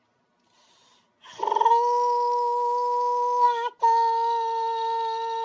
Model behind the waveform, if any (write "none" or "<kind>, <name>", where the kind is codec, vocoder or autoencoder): none